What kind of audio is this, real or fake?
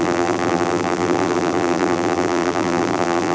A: fake